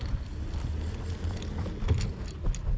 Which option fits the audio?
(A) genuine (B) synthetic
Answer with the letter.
A